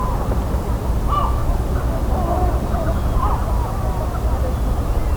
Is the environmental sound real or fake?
real